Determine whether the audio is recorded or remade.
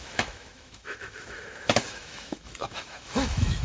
remade